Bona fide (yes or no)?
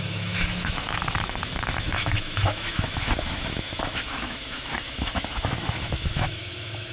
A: no